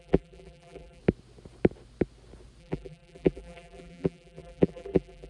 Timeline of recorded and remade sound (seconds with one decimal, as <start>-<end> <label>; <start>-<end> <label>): 0.0-1.0 remade; 1.0-2.6 recorded; 2.6-5.3 remade